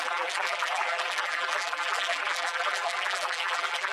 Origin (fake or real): fake